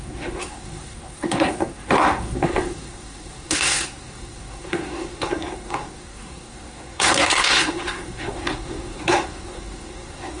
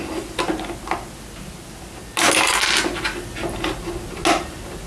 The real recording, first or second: second